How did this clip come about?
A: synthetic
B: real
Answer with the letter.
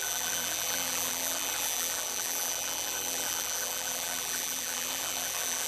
A